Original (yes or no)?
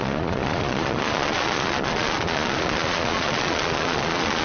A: no